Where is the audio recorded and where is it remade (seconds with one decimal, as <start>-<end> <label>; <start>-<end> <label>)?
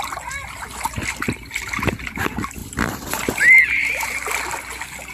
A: 0.0-5.1 recorded